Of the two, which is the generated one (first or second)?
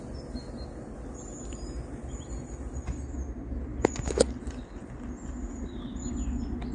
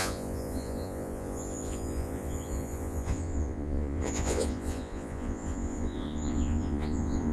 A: second